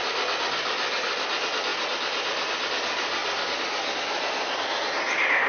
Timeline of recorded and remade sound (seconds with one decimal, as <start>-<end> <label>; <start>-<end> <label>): 0.0-5.5 recorded